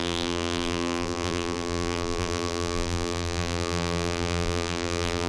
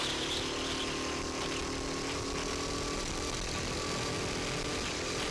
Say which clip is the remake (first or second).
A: first